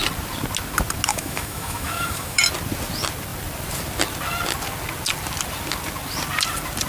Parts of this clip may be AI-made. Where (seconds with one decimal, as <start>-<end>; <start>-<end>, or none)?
1.1-2.4